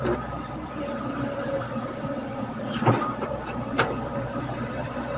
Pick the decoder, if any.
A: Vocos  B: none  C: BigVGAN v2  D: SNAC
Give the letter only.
C